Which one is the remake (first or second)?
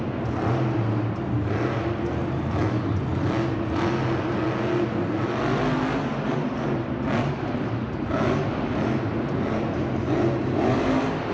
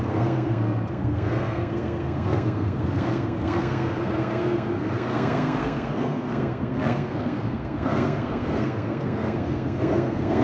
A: second